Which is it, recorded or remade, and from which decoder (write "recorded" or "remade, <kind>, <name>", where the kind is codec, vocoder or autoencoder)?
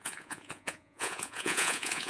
remade, vocoder, Vocos